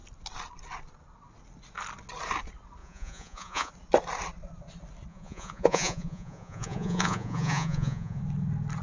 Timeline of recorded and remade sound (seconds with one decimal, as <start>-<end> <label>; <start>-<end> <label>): 0.0-2.8 recorded; 2.8-3.7 remade; 3.7-5.1 recorded; 5.1-8.2 remade; 8.2-8.8 recorded